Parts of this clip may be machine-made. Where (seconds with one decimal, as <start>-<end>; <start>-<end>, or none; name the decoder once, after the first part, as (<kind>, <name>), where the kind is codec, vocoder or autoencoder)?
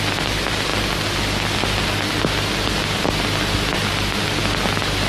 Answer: none